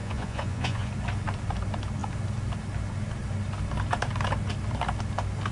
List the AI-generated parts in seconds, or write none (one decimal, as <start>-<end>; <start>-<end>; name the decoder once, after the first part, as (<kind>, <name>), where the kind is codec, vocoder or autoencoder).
0.0-0.9 (vocoder, Vocos)